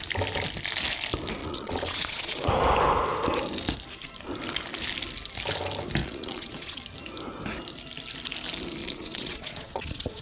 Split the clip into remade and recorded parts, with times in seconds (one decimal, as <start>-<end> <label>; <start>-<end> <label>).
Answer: 0.0-1.4 recorded; 1.4-2.5 remade; 2.5-6.0 recorded; 6.0-6.8 remade; 6.8-8.8 recorded; 8.8-10.2 remade